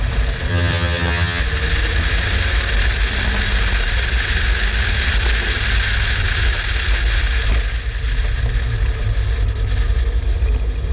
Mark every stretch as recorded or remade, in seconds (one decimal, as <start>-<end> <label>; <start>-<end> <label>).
0.0-0.5 recorded; 0.5-1.4 remade; 1.4-10.9 recorded